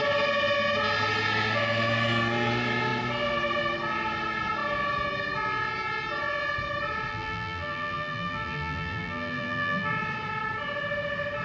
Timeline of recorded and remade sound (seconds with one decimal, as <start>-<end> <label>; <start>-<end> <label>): 0.0-7.1 recorded; 7.1-9.9 remade; 9.9-11.4 recorded